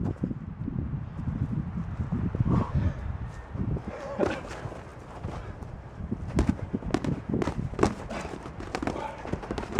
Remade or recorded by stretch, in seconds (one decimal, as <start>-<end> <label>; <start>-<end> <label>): 0.0-9.8 recorded